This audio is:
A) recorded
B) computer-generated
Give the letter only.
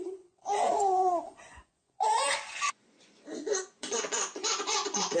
B